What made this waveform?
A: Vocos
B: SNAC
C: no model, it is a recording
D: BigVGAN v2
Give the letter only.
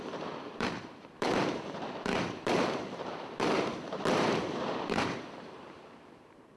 D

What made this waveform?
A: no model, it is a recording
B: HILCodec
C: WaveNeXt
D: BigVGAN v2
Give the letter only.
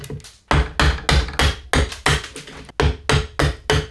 A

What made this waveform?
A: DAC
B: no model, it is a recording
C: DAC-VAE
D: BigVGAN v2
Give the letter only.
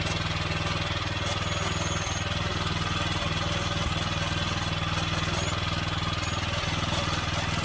B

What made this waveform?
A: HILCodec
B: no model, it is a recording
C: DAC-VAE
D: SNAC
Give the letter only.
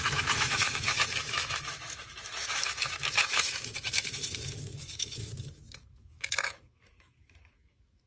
C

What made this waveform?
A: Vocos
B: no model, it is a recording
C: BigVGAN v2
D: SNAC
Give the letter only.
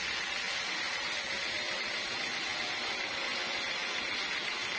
B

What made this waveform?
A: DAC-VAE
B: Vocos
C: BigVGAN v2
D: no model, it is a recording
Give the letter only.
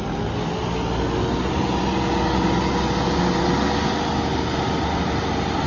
D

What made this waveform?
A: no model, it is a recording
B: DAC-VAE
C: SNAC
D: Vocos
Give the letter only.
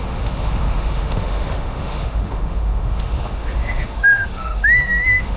B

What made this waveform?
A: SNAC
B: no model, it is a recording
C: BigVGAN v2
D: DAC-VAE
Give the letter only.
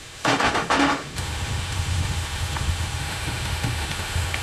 D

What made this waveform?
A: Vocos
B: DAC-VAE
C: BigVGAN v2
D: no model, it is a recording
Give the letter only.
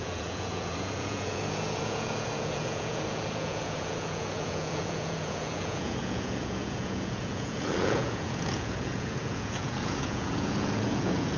A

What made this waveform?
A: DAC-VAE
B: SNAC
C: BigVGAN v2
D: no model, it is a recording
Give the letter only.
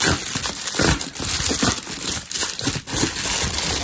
D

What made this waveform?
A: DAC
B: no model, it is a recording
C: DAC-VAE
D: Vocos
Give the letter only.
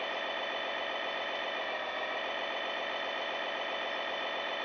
B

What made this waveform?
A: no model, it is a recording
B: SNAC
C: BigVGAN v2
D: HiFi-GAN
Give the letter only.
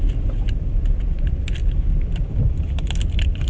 C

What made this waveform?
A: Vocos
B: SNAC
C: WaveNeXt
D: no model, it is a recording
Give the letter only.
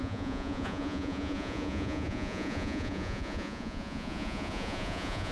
A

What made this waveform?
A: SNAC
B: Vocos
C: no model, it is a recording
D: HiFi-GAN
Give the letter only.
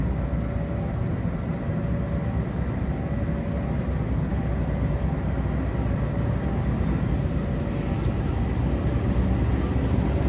C